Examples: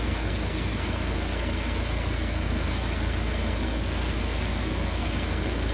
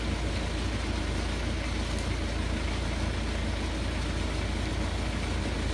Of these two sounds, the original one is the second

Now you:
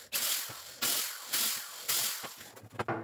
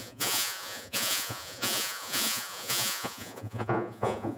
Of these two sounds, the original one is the first